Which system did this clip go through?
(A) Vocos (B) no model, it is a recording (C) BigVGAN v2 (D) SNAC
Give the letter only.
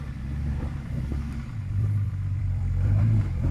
C